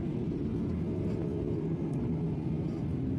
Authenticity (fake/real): real